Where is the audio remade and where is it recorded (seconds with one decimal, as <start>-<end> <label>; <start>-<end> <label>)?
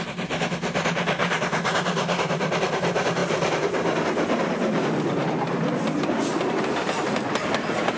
0.0-1.2 recorded; 1.2-2.5 remade; 2.5-8.0 recorded